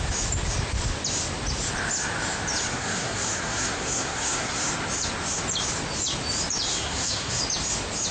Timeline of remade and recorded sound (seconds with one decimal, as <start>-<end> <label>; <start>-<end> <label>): 0.0-2.7 recorded; 2.7-4.7 remade; 4.7-6.7 recorded; 6.7-7.4 remade; 7.4-8.1 recorded